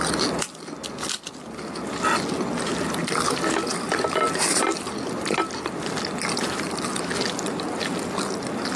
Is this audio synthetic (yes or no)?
no